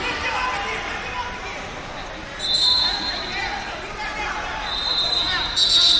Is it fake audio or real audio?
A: real